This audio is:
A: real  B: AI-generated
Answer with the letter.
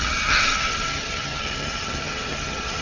B